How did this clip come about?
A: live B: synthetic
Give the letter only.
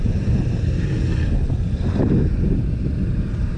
A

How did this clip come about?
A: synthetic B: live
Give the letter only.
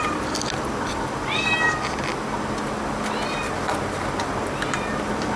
B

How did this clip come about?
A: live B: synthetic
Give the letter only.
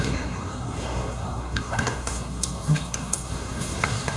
B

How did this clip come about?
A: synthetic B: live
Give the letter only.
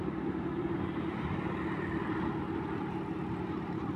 B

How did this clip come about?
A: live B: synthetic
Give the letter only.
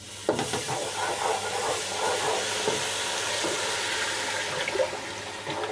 A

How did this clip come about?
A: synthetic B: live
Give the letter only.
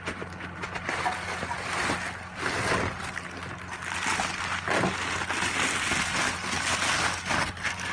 B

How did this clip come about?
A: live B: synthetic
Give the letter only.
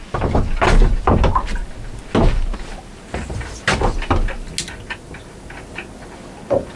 A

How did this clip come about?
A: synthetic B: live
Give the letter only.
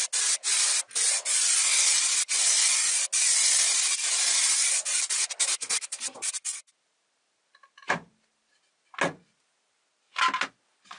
B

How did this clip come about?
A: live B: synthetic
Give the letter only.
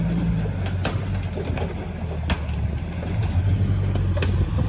A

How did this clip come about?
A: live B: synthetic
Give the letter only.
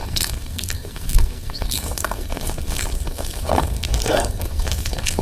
B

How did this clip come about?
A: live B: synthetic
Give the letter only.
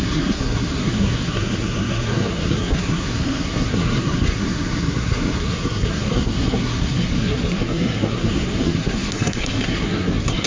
B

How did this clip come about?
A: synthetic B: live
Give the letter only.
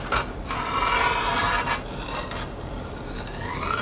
B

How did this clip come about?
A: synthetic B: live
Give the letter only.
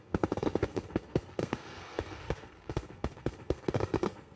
A